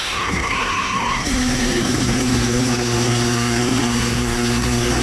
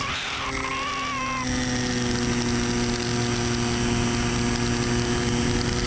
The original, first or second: second